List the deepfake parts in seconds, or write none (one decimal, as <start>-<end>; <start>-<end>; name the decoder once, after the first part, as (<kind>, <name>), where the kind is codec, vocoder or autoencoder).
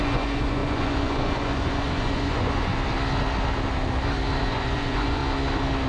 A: 0.0-2.7 (vocoder, Vocos); 4.4-5.2